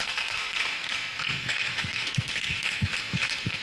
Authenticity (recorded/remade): remade